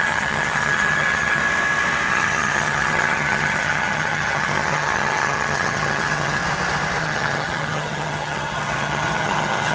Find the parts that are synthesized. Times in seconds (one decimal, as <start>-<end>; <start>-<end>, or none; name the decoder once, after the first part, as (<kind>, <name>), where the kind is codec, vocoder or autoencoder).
0.0-1.4 (vocoder, HiFi-GAN); 2.1-6.4; 7.0-9.7